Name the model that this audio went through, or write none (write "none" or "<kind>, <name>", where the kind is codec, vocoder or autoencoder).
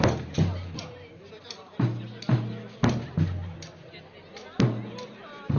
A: none